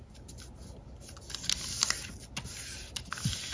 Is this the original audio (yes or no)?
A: yes